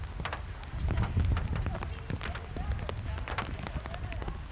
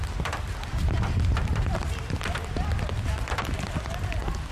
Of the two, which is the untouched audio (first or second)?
first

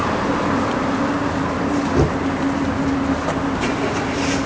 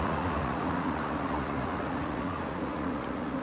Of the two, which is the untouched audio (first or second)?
first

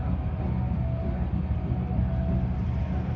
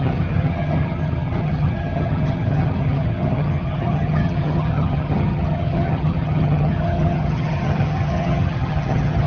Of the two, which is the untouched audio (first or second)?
first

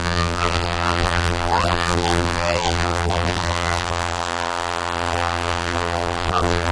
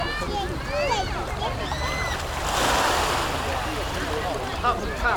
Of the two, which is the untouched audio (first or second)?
second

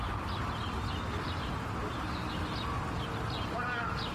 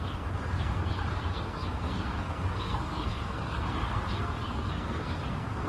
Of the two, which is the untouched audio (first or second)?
first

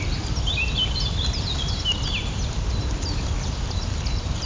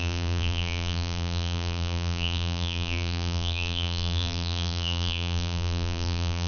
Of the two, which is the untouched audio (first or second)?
first